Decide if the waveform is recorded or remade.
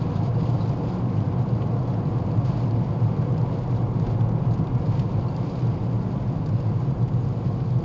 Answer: recorded